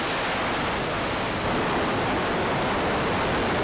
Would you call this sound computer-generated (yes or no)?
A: no